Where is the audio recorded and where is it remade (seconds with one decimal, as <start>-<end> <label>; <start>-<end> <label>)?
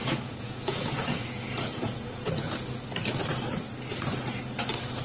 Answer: 0.0-2.3 remade; 2.3-5.0 recorded